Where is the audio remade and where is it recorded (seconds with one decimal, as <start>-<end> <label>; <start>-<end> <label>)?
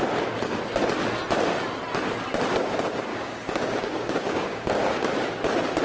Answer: 0.0-3.1 recorded; 3.1-5.1 remade; 5.1-5.8 recorded